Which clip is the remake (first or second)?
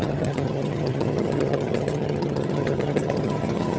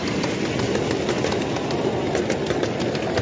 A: first